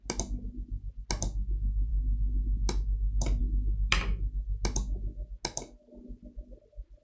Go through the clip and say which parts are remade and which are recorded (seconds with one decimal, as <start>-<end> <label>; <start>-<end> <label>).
0.0-7.0 recorded